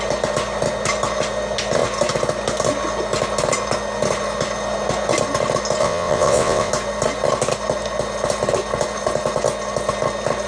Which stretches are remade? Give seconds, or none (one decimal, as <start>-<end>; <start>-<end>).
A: 5.8-6.7